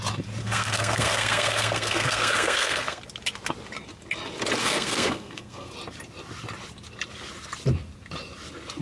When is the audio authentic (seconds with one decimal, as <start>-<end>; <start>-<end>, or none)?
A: 0.0-0.4; 3.0-4.6; 5.7-8.8